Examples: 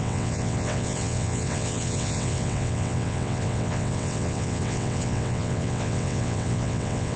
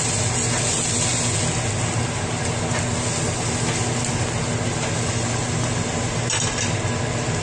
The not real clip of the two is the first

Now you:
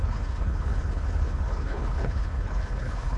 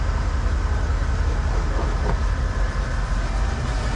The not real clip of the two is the first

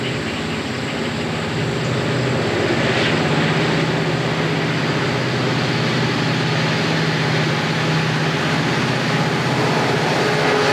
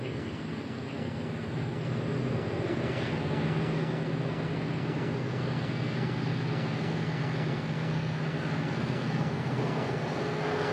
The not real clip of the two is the second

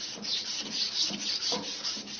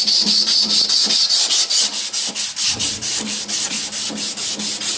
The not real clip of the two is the first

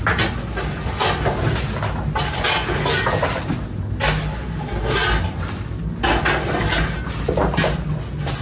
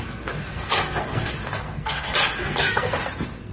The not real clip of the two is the second